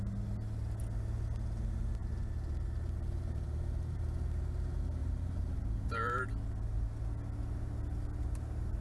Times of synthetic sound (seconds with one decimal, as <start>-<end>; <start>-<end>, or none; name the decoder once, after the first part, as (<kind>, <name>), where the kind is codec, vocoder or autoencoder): 2.0-4.0 (vocoder, BigVGAN v2); 5.0-6.3